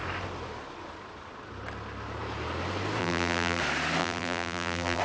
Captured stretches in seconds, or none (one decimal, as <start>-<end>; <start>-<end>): 0.0-3.0; 3.6-4.0